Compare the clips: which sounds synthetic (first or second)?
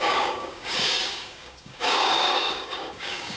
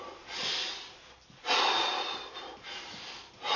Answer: first